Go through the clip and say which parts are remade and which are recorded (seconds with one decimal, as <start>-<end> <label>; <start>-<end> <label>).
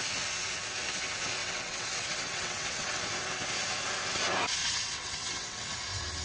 0.0-1.4 recorded; 1.4-3.0 remade; 3.0-4.6 recorded; 4.6-5.8 remade; 5.8-6.2 recorded